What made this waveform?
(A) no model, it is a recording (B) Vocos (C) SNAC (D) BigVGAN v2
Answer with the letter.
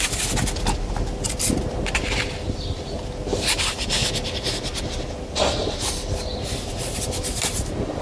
D